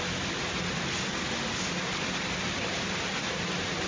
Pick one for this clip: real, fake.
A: real